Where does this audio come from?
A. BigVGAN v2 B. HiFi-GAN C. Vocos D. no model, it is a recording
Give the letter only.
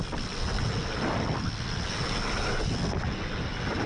D